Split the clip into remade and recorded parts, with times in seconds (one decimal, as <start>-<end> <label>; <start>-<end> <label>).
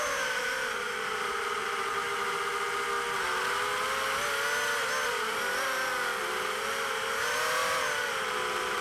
0.0-1.9 remade; 1.9-6.2 recorded; 6.2-8.8 remade